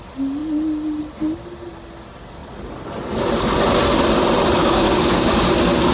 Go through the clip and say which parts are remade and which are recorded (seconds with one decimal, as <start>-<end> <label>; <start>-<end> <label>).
0.0-4.6 recorded; 4.6-5.4 remade; 5.4-5.9 recorded